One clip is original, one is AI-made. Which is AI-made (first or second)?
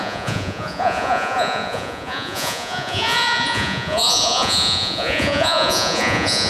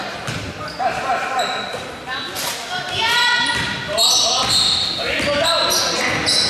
first